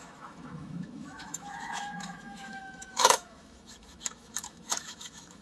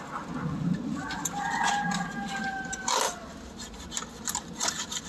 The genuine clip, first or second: second